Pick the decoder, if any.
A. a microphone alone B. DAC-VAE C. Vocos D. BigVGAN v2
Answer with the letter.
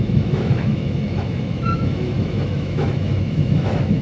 B